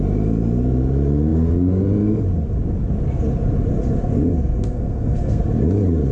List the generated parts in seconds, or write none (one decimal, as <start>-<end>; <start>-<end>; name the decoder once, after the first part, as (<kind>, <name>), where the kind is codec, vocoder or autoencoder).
4.3-5.4 (codec, SNAC)

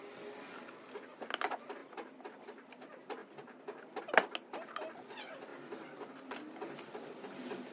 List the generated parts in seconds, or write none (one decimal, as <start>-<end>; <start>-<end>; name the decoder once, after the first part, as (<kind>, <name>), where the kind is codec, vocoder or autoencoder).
none

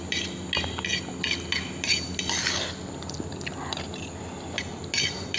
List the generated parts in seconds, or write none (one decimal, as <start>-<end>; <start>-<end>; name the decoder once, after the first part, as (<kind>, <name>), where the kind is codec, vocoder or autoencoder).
none